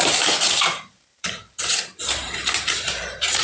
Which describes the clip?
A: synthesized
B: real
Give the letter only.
A